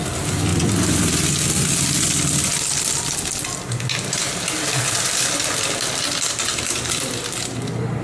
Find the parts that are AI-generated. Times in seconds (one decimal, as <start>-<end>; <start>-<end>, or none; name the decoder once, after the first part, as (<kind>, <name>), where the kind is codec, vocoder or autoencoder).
none